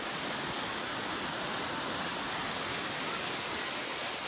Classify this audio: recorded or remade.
recorded